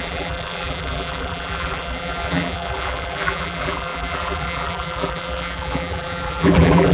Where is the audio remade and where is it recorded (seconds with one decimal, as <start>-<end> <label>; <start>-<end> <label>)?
0.0-6.9 remade